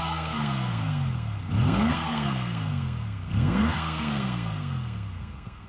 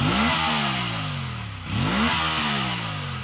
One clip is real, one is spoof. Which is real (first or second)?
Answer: second